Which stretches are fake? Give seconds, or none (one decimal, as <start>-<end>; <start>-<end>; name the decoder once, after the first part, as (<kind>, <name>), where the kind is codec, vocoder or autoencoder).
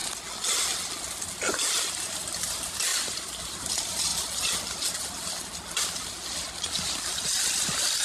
2.0-4.1 (vocoder, BigVGAN v2); 7.4-8.0